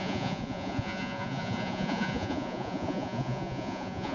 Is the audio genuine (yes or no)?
no